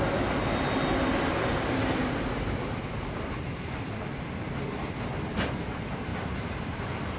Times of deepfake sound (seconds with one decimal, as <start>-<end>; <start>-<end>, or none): 0.0-0.4; 4.7-7.2